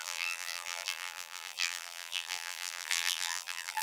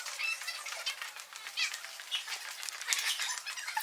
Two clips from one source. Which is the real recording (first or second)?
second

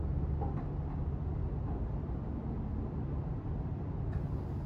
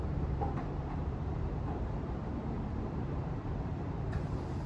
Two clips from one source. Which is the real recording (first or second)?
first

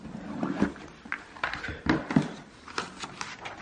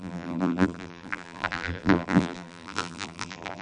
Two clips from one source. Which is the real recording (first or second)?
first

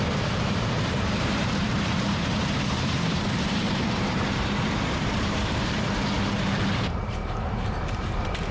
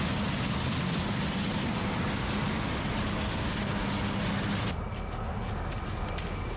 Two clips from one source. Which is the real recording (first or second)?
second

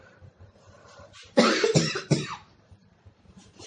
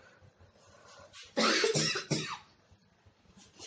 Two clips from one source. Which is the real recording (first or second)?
second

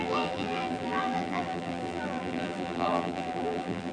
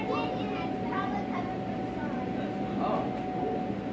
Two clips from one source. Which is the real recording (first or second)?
second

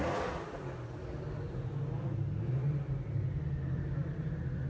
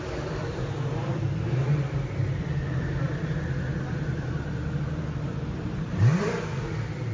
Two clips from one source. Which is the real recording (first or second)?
first